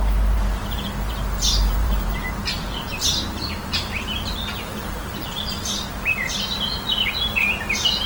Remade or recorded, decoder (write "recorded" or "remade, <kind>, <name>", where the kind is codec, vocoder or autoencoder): remade, vocoder, BigVGAN v2